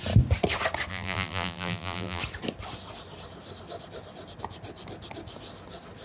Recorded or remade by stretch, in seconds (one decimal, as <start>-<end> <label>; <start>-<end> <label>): 0.0-0.9 recorded; 0.9-2.2 remade; 2.2-6.0 recorded